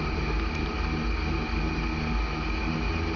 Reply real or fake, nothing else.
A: real